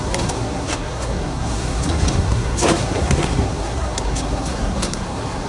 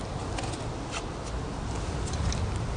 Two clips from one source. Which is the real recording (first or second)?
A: second